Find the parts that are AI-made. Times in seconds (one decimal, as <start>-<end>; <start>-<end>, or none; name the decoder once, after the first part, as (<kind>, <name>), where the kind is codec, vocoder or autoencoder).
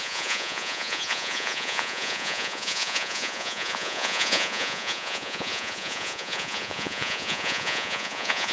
0.0-8.5 (vocoder, Vocos)